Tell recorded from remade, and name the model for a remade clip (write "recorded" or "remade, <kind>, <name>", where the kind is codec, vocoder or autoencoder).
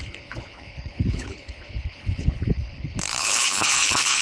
remade, codec, HILCodec